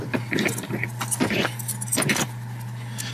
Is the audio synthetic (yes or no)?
no